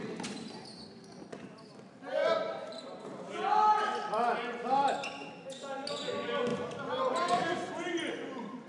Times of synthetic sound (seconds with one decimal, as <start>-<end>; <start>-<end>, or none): none